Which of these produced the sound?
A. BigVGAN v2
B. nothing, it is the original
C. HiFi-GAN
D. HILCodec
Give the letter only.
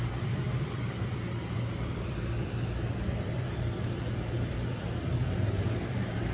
A